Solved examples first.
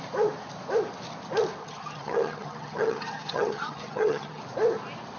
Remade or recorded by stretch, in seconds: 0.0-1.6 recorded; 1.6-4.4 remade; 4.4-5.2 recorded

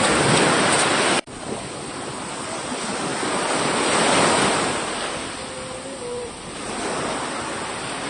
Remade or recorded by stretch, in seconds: 0.0-3.1 recorded; 3.1-7.3 remade; 7.3-8.1 recorded

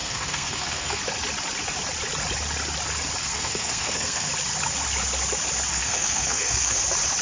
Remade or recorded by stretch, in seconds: 0.0-1.0 remade; 1.0-3.2 recorded; 3.2-4.3 remade; 4.3-5.7 recorded; 5.7-6.8 remade; 6.8-7.2 recorded

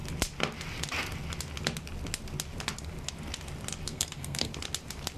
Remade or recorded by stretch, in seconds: 0.0-3.9 recorded; 3.9-4.5 remade; 4.5-5.2 recorded

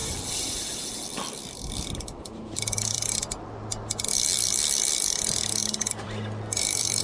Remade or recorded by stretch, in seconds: 0.0-3.7 remade; 3.7-5.6 recorded; 5.6-7.0 remade